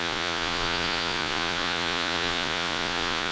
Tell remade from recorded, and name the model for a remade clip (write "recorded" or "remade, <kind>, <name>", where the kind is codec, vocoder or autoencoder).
remade, vocoder, Vocos